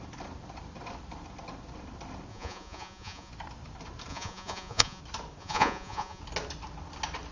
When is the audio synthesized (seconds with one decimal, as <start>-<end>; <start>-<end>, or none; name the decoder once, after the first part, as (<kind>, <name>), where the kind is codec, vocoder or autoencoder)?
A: 2.3-3.3 (vocoder, Vocos); 4.1-5.0; 5.4-6.2